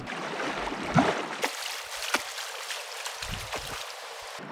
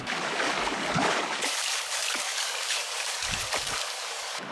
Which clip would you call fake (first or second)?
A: second